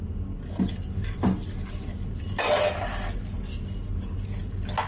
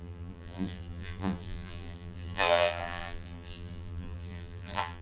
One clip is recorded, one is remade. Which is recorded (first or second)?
first